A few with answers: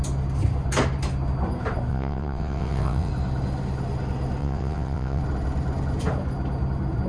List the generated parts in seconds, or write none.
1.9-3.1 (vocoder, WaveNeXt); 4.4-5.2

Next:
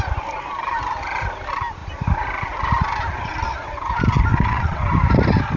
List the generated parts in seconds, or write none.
4.3-4.8 (vocoder, WaveNeXt)

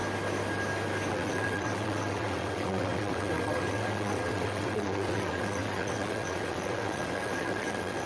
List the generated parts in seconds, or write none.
1.1-8.1 (vocoder, WaveNeXt)